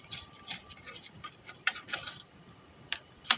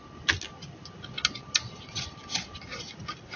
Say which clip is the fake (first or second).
first